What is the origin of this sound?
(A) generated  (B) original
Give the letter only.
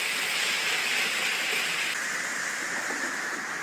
B